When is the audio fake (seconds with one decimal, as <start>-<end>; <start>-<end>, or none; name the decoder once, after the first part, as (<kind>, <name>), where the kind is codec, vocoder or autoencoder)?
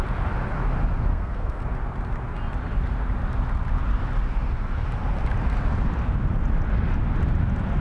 1.1-1.6 (codec, SNAC)